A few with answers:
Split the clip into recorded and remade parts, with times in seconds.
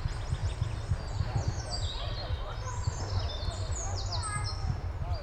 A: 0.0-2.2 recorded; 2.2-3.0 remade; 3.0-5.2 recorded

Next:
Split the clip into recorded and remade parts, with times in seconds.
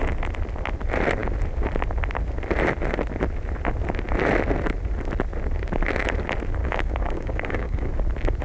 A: 0.0-6.6 recorded; 6.6-7.9 remade; 7.9-8.4 recorded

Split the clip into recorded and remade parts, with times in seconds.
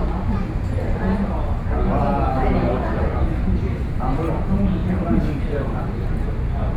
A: 0.0-2.3 recorded; 2.3-4.0 remade; 4.0-4.8 recorded; 4.8-6.1 remade; 6.1-6.8 recorded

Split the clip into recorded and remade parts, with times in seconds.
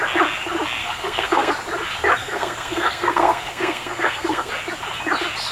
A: 0.0-0.8 recorded; 0.8-1.5 remade; 1.5-2.2 recorded; 2.2-4.5 remade; 4.5-5.5 recorded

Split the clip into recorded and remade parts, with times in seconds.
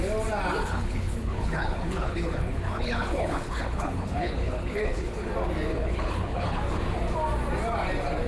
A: 0.0-0.6 recorded; 0.6-5.3 remade; 5.3-5.7 recorded; 5.7-6.6 remade; 6.6-8.3 recorded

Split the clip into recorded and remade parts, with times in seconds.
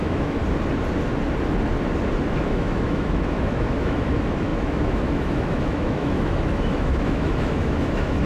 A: 0.0-0.4 remade; 0.4-2.4 recorded; 2.4-8.3 remade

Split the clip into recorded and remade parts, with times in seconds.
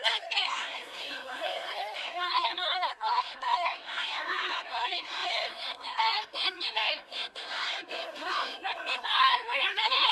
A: 0.0-10.1 remade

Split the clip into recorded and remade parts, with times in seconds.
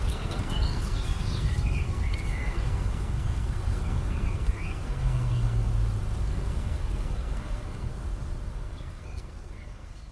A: 0.0-5.7 remade; 5.7-6.2 recorded; 6.2-7.9 remade; 7.9-8.5 recorded; 8.5-10.1 remade